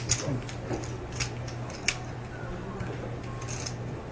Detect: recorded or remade recorded